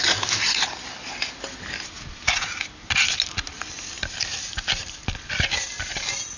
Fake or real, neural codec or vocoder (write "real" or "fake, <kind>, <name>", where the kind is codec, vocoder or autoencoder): real